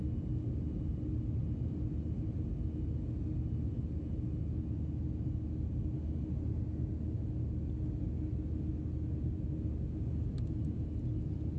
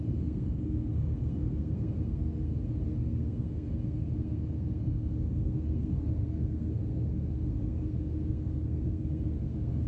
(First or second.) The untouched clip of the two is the first